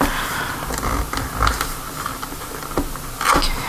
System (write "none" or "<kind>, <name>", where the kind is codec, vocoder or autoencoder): none